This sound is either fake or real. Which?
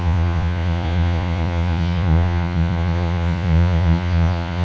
fake